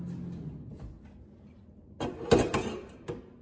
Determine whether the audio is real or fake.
real